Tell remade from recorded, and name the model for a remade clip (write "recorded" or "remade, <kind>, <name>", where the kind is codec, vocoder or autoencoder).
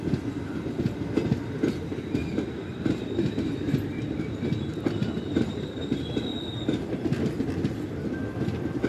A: recorded